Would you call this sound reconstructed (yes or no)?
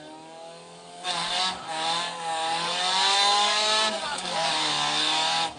yes